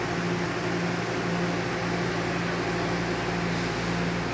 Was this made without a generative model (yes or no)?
yes